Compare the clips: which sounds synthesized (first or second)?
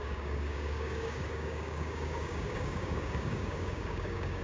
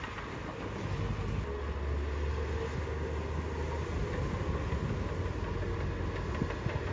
first